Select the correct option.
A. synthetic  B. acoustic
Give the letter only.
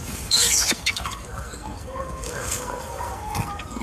A